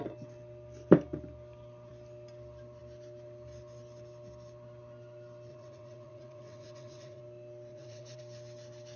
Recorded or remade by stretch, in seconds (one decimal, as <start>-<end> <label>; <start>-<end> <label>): 0.0-5.5 recorded; 5.5-7.2 remade; 7.2-7.7 recorded; 7.7-8.2 remade; 8.2-9.0 recorded